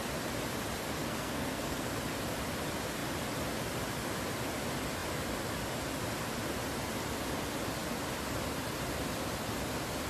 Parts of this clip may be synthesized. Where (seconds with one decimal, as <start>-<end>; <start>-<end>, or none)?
1.0-1.9